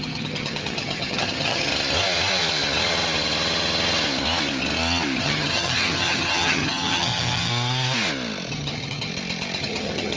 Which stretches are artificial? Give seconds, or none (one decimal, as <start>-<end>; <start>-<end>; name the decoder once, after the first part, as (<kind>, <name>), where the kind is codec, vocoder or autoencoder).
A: 0.0-1.7 (vocoder, HiFi-GAN); 5.2-7.5; 8.5-9.1; 9.6-10.2